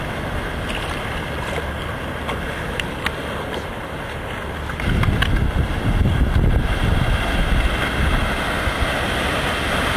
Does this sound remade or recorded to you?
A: recorded